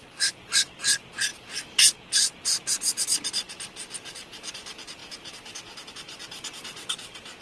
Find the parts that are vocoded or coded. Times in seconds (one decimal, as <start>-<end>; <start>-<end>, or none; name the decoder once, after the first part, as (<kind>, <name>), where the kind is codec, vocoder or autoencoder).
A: none